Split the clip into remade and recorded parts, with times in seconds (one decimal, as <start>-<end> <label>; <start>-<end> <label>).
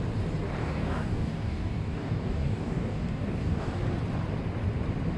0.0-0.6 recorded; 0.6-3.7 remade; 3.7-5.2 recorded